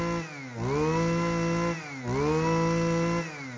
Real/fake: real